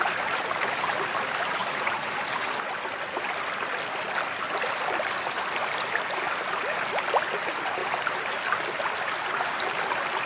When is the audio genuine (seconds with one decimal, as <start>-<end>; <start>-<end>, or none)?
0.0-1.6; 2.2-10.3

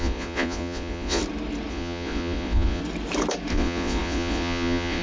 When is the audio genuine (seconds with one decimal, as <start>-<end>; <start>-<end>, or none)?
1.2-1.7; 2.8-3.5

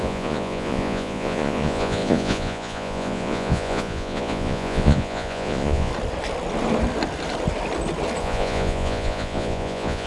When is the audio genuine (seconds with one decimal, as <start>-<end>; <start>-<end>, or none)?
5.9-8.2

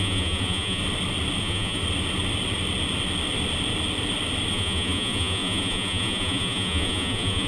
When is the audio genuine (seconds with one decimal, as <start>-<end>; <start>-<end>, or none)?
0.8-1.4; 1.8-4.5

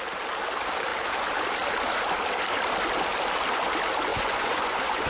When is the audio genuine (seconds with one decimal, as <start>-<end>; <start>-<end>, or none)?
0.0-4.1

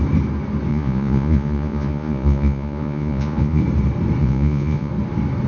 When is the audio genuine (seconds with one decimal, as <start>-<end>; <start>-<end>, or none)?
0.0-0.7; 3.6-4.2; 4.9-5.5